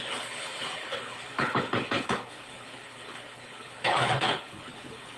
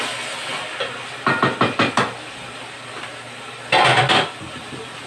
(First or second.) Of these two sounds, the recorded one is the second